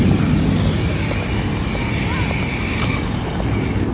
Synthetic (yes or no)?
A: no